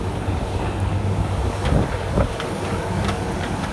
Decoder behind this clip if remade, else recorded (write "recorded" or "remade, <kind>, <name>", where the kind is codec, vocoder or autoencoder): remade, codec, DAC